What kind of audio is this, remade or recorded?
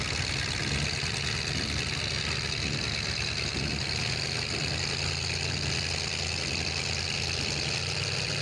recorded